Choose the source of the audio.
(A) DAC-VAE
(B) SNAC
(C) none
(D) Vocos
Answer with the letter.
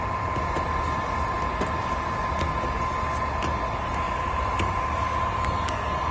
C